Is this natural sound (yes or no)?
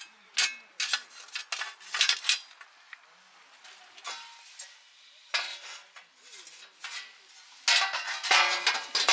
yes